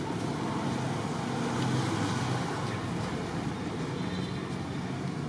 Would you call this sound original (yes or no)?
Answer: yes